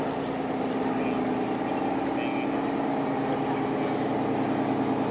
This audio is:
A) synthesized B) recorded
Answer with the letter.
B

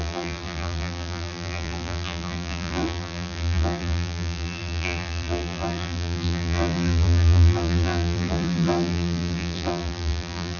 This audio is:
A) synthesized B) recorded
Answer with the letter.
A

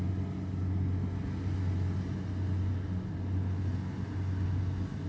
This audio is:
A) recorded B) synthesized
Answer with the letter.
A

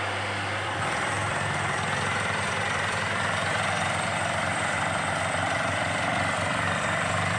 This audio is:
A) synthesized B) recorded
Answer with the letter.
A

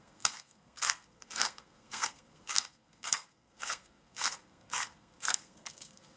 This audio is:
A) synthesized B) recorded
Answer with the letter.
A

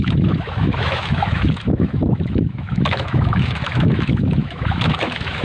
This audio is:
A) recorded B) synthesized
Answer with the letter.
B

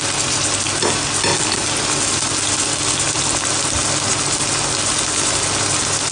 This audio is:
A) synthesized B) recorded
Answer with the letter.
B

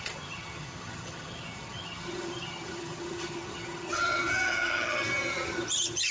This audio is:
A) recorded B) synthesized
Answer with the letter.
B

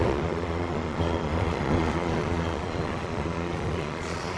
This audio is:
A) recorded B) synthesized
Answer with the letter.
B